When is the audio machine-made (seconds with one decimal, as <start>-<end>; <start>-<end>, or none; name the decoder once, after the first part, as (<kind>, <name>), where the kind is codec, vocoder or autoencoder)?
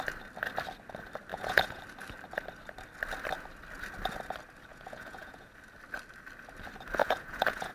1.3-1.8 (vocoder, Vocos); 4.7-5.5; 7.0-7.7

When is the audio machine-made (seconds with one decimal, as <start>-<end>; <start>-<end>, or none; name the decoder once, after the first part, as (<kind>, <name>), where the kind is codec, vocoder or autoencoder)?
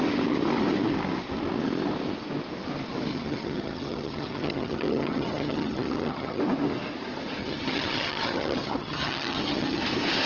3.1-6.4 (vocoder, HiFi-GAN); 7.4-9.8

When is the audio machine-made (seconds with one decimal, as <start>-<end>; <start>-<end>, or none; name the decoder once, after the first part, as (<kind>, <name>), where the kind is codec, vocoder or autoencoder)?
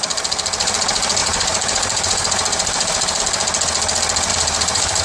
1.2-3.2 (vocoder, BigVGAN v2); 4.3-5.0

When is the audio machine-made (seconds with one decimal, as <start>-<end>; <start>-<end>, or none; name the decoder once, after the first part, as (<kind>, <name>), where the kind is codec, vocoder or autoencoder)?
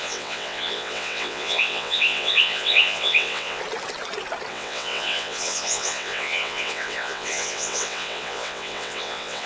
0.0-3.6 (vocoder, WaveNeXt); 4.5-9.5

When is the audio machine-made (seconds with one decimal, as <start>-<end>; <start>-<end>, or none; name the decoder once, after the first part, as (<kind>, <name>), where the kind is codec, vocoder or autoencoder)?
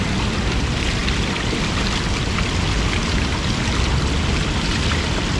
none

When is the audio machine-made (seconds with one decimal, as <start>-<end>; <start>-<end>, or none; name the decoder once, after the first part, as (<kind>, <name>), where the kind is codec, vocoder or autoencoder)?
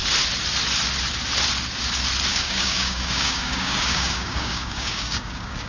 2.3-5.7 (codec, DAC)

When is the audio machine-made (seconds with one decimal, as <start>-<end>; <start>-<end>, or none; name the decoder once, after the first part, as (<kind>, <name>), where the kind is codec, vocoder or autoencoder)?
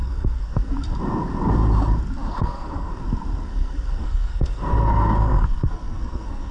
0.0-0.7 (codec, SNAC); 2.3-3.0; 3.5-6.5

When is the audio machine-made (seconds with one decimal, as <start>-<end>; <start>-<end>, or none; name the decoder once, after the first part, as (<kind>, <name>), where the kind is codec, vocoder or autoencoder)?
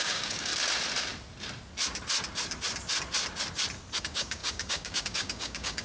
0.0-0.5 (codec, DAC); 4.0-5.8